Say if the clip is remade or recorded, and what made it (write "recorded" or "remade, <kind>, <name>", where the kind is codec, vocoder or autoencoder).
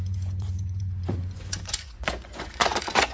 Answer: remade, vocoder, Vocos